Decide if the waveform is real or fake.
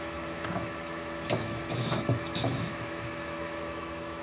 fake